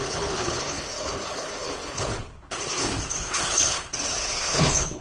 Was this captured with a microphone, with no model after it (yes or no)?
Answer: no